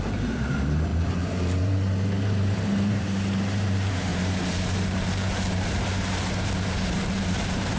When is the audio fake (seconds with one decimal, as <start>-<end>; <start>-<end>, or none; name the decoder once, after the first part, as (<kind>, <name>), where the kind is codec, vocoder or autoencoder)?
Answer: 0.0-7.8 (vocoder, BigVGAN v2)